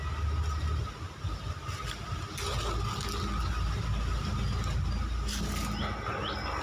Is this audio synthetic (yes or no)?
no